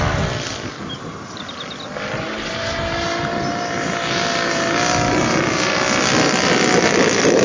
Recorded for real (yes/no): yes